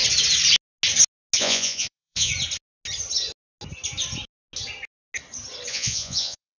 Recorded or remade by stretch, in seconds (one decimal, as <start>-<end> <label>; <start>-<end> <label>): 0.0-1.4 recorded; 1.4-2.3 remade; 2.3-5.7 recorded; 5.7-6.6 remade